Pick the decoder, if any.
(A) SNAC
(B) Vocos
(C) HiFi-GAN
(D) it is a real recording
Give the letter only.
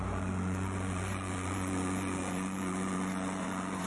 B